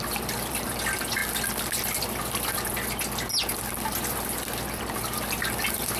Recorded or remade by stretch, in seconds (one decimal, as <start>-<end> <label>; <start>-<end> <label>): 0.0-1.2 remade; 1.2-4.8 recorded; 4.8-6.0 remade